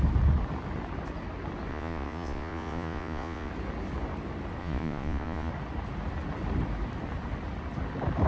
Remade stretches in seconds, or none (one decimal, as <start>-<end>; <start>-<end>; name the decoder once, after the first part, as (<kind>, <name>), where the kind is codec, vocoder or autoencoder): 1.7-3.5 (vocoder, Vocos); 4.6-5.5